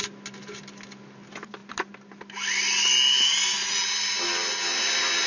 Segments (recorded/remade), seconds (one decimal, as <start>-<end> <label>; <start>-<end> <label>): 0.0-5.3 recorded

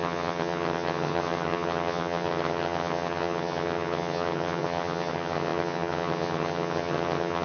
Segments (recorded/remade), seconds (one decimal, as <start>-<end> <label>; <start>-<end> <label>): 0.0-7.4 remade

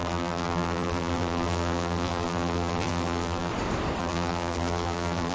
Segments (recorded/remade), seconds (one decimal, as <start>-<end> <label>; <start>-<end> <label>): 0.0-3.5 remade; 3.5-4.0 recorded; 4.0-5.3 remade

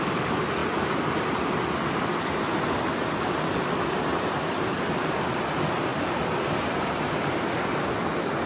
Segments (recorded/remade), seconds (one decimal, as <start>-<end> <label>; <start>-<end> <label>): 0.0-8.5 recorded